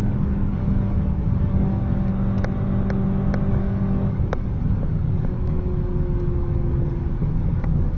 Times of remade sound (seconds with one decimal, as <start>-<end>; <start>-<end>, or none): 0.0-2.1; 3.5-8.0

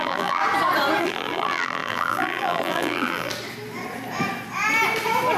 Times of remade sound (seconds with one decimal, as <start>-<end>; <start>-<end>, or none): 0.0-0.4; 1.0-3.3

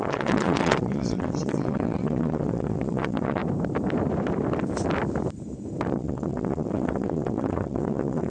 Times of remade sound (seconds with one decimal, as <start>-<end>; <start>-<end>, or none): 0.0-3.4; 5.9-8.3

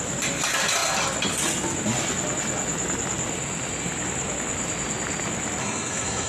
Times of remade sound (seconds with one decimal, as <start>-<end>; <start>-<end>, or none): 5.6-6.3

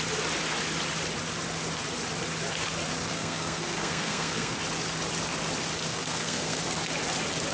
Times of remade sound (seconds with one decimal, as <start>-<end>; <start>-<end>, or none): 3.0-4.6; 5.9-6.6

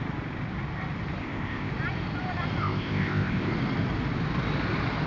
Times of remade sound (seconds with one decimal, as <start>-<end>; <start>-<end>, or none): 1.2-1.7; 2.6-3.5

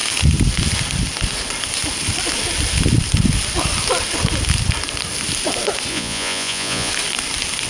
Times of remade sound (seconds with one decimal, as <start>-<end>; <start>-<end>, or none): 5.9-6.9

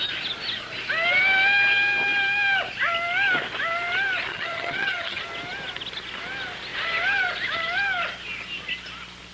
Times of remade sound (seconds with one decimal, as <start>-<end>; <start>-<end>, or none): 4.3-5.2